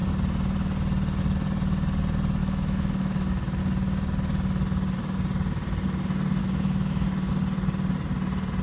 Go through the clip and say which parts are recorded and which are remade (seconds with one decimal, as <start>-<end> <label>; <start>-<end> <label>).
0.0-2.4 recorded; 2.4-3.6 remade; 3.6-6.4 recorded; 6.4-7.3 remade; 7.3-8.6 recorded